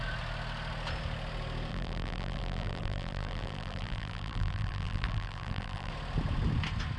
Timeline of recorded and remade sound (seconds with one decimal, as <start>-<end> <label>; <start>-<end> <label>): 0.0-1.7 recorded; 1.7-5.9 remade; 5.9-7.0 recorded